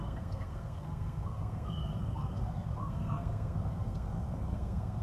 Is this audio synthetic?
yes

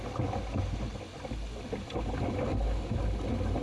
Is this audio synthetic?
no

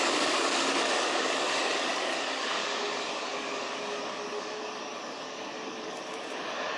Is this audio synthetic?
yes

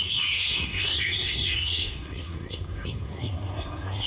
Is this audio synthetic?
yes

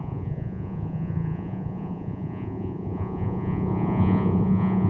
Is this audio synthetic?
yes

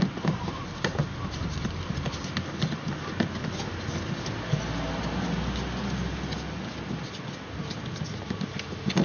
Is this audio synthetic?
no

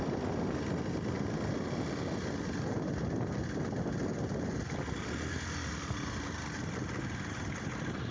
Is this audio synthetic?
no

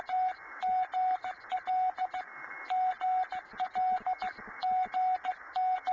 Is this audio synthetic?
no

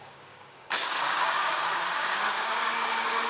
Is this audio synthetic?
yes